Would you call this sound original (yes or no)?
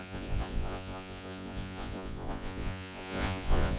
no